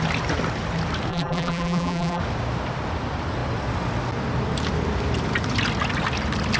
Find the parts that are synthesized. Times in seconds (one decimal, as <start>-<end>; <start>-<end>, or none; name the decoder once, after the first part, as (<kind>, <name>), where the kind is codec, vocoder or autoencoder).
1.1-2.2 (vocoder, BigVGAN v2)